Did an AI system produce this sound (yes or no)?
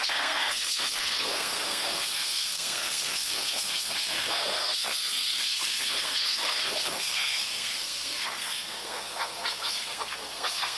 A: yes